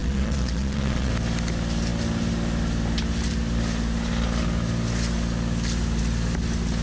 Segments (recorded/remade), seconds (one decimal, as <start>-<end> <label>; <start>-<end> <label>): 0.0-1.1 remade; 1.1-6.8 recorded